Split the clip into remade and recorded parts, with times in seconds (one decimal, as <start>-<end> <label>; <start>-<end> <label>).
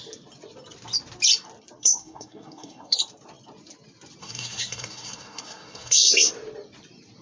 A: 0.0-1.8 recorded; 1.8-3.0 remade; 3.0-4.2 recorded; 4.2-6.3 remade; 6.3-7.2 recorded